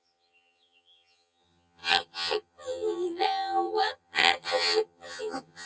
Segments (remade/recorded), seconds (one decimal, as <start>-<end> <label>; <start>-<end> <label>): 0.0-5.7 remade